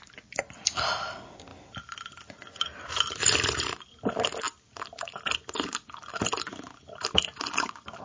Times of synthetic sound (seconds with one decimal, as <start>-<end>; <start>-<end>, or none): none